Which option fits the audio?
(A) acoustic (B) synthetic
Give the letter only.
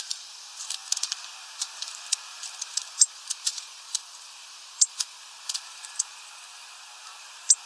B